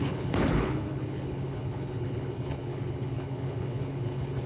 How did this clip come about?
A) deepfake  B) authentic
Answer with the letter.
A